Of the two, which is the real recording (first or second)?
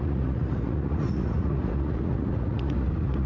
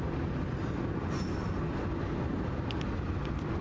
second